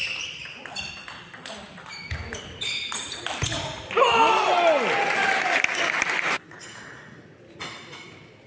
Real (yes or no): yes